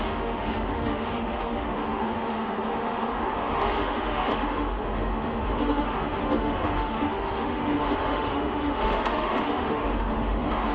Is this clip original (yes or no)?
no